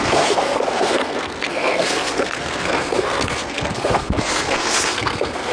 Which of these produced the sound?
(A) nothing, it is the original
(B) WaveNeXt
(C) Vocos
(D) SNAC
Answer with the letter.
D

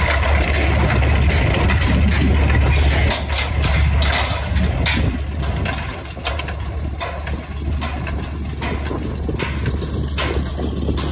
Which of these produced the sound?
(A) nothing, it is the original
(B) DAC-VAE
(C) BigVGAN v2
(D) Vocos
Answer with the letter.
A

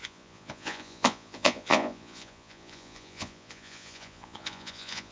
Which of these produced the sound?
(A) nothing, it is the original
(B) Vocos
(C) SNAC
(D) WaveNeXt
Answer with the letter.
B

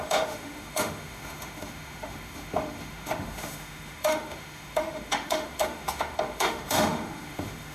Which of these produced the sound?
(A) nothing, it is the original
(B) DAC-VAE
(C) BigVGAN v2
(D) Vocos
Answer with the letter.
B